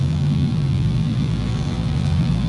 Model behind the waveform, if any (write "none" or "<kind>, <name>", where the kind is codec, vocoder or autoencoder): vocoder, BigVGAN v2